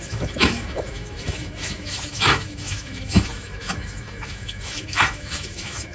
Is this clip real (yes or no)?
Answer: no